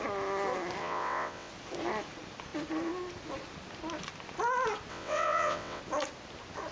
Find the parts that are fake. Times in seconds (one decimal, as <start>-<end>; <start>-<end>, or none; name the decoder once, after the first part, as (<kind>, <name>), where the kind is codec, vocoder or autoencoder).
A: 0.8-1.5 (vocoder, WaveNeXt); 4.9-5.8